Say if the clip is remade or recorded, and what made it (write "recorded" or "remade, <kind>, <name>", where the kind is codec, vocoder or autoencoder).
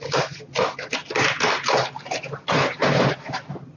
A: recorded